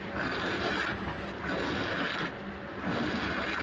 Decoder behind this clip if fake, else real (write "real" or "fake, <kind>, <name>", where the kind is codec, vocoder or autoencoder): real